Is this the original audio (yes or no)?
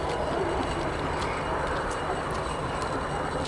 yes